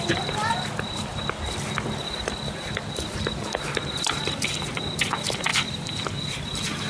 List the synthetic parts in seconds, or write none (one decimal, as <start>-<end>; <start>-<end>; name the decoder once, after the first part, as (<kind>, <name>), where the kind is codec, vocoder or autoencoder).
none